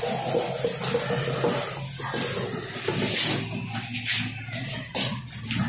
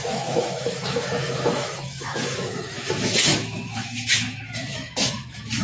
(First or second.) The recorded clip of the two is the first